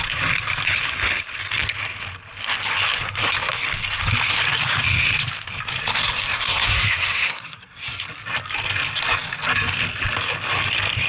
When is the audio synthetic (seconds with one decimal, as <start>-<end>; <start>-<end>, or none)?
6.3-8.0